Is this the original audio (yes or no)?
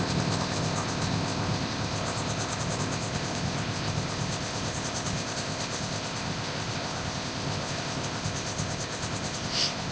no